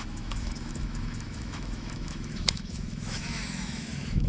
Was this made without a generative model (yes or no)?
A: no